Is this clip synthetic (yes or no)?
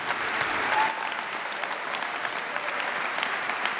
no